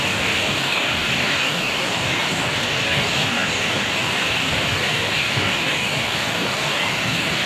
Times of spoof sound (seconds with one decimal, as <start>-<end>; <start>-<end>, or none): 0.0-7.5